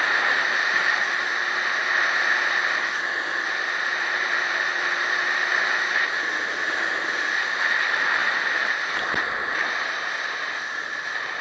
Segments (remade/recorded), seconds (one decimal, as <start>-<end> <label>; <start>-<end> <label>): 0.0-11.4 recorded